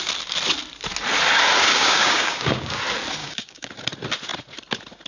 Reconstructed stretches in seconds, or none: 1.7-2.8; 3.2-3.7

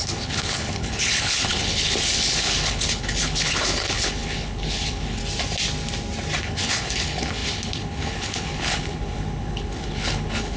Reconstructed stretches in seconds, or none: 0.0-5.2; 6.4-10.6

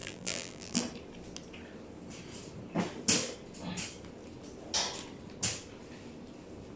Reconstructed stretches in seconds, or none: 0.0-0.8

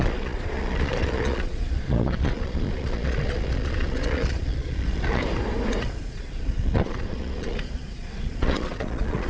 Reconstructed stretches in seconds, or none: 0.0-5.2; 5.8-9.3

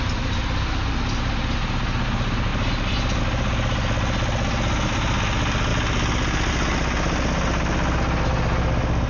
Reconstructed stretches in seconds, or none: none

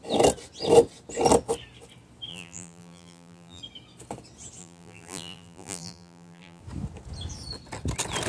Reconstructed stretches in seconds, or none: 2.3-3.6; 4.6-6.6

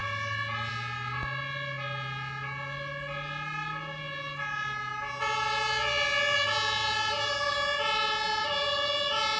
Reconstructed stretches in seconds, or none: none

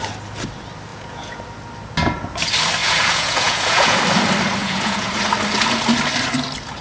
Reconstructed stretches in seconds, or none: 0.9-1.4; 2.8-4.0; 4.6-5.1